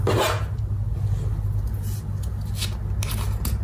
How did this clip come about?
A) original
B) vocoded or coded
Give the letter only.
A